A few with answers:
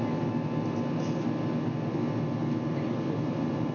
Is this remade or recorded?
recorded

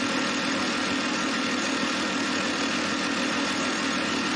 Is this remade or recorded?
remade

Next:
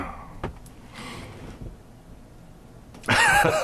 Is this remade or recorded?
recorded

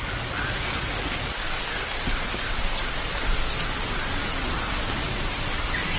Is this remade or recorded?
recorded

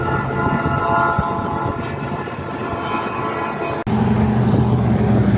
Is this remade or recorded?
recorded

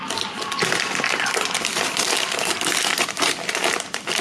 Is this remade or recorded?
remade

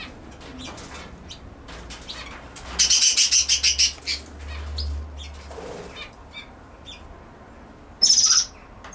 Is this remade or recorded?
recorded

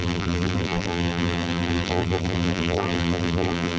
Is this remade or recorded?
remade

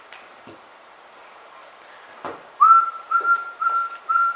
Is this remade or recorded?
remade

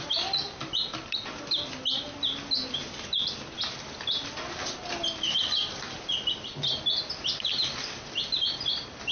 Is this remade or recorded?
remade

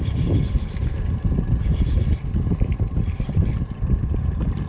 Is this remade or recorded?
remade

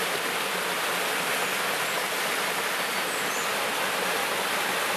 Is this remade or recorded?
recorded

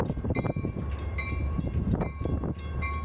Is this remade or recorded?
remade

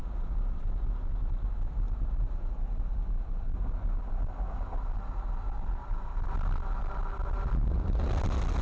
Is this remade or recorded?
recorded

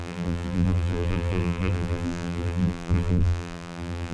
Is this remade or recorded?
remade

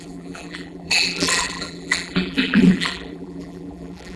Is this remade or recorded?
remade